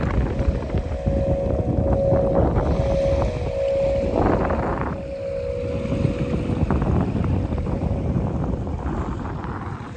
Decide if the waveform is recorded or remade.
recorded